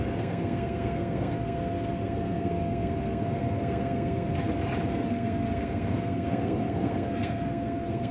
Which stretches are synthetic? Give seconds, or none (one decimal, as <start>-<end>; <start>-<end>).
0.0-4.3; 5.1-8.1